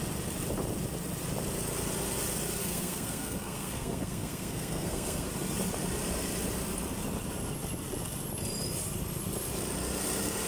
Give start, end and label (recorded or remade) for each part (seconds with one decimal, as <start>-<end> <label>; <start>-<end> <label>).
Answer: 0.0-2.6 recorded; 2.6-5.3 remade; 5.3-10.5 recorded